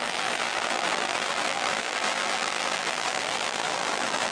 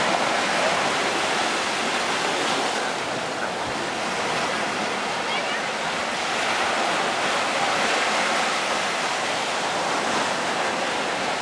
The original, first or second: second